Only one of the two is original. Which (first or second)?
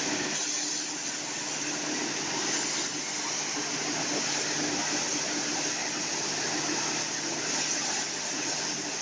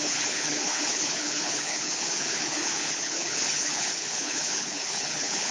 first